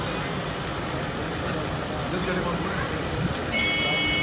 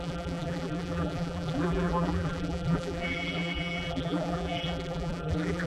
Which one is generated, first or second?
second